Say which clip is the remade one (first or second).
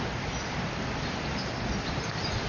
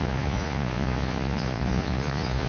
second